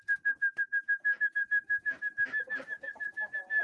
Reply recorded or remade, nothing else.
recorded